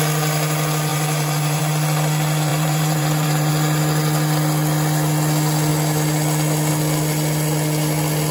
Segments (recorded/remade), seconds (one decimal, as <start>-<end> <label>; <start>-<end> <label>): 0.0-0.9 recorded; 0.9-1.6 remade; 1.6-2.5 recorded; 2.5-3.5 remade; 3.5-8.3 recorded